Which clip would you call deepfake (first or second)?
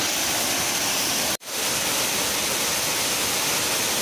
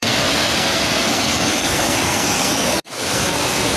second